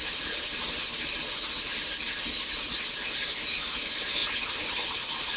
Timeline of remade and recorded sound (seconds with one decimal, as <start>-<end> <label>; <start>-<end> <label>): 0.0-0.6 remade; 0.6-3.8 recorded; 3.8-5.4 remade